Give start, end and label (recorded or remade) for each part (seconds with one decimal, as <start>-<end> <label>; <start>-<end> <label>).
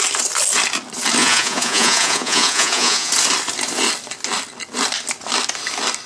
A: 0.0-1.2 recorded; 1.2-3.1 remade; 3.1-6.1 recorded